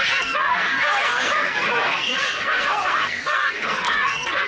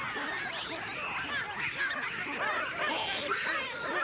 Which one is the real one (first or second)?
second